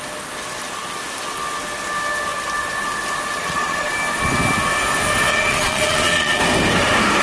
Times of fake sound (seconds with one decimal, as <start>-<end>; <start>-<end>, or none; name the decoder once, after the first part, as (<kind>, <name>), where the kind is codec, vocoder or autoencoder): 3.4-3.9 (vocoder, Vocos); 5.3-6.4